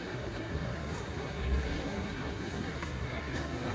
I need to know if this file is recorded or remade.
remade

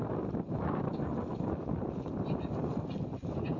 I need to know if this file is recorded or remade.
recorded